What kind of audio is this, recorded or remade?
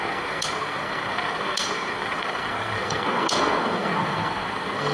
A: remade